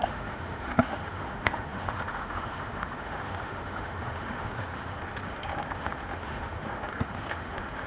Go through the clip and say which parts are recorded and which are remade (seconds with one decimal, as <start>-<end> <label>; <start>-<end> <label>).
0.0-7.9 remade